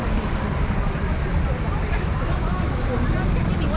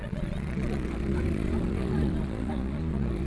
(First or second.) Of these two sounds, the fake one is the second